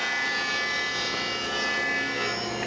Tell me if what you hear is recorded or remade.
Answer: recorded